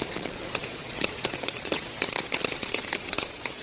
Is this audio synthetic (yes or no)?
yes